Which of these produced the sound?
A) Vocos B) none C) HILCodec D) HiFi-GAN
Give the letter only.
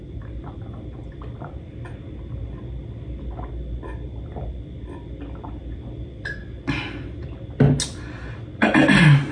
B